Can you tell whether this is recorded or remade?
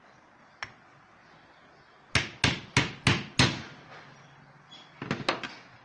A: recorded